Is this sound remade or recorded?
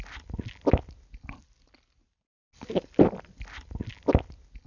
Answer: recorded